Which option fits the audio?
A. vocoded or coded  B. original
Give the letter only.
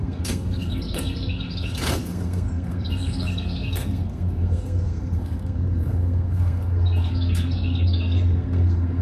A